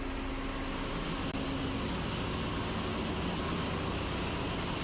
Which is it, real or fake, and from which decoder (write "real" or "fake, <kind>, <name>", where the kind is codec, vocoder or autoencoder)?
real